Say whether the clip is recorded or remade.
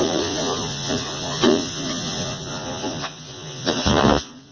remade